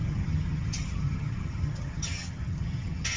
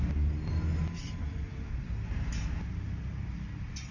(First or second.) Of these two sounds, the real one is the second